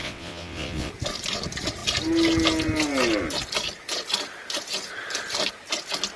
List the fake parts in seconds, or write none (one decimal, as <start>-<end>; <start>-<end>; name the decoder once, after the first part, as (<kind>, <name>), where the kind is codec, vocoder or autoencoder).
0.0-0.9 (vocoder, WaveNeXt)